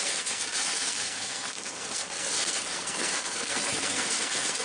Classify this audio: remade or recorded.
remade